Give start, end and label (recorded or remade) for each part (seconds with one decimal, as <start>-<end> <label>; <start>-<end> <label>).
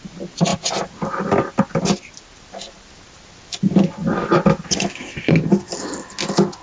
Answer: 0.0-6.6 recorded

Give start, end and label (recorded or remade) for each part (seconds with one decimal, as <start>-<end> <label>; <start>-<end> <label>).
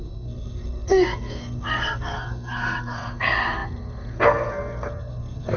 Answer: 0.0-5.6 remade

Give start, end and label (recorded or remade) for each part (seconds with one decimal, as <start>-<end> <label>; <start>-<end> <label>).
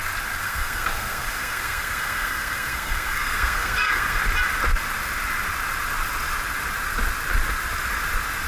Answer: 0.0-0.4 recorded; 0.4-4.2 remade; 4.2-8.5 recorded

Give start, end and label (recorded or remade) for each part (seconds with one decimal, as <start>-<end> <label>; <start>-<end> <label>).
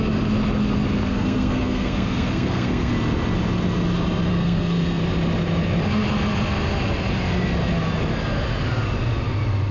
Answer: 0.0-1.1 recorded; 1.1-2.9 remade; 2.9-4.3 recorded; 4.3-5.0 remade; 5.0-9.7 recorded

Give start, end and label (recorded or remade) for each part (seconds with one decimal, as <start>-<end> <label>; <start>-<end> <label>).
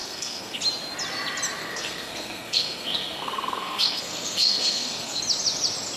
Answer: 0.0-0.6 remade; 0.6-1.6 recorded; 1.6-5.2 remade; 5.2-6.0 recorded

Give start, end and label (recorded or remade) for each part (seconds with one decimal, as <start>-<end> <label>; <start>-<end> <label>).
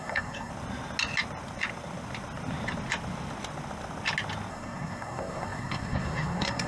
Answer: 0.0-0.5 remade; 0.5-4.5 recorded; 4.5-6.7 remade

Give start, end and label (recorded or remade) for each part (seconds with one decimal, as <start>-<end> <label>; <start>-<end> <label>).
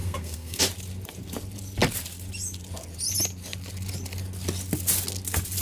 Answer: 0.0-0.6 remade; 0.6-5.6 recorded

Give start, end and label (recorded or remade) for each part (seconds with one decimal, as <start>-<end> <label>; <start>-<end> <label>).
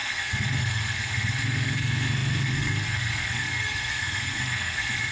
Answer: 0.0-5.1 remade